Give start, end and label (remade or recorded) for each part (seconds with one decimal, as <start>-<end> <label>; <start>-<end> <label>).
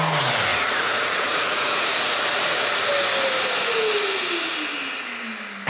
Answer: 0.0-0.5 recorded; 0.5-2.9 remade; 2.9-5.7 recorded